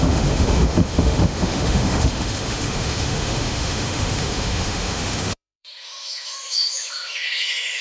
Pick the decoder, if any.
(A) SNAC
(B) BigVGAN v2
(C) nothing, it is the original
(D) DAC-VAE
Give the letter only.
D